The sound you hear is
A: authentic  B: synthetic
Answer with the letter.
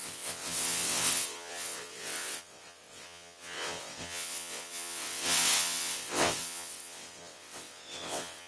B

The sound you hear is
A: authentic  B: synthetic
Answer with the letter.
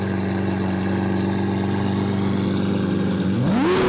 A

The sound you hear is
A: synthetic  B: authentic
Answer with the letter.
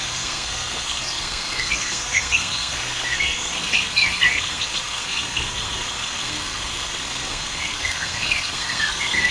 A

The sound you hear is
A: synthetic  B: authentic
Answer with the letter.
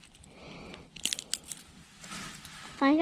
B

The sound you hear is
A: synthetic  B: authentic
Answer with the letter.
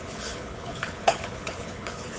A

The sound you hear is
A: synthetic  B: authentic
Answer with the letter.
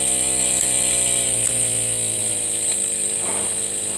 B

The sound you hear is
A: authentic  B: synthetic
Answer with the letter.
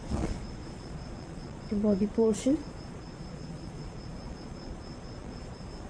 B